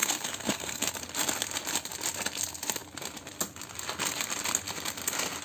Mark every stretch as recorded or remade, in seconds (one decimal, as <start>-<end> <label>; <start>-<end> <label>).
0.0-0.9 remade; 0.9-5.4 recorded